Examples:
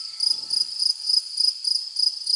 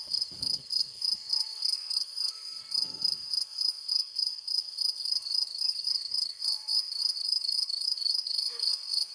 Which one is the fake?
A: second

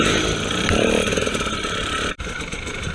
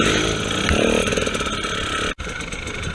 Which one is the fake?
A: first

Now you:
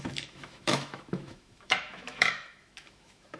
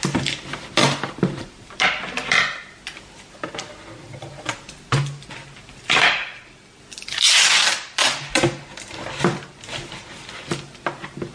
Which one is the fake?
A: first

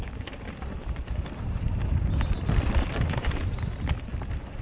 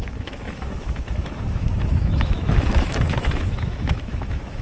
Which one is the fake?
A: second